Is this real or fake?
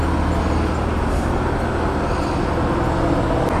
real